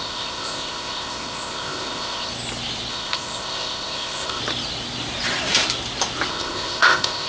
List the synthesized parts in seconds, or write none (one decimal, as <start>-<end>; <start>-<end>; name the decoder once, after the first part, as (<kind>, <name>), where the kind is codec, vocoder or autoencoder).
0.0-2.3 (codec, ZipCodec); 2.9-4.4; 6.3-7.3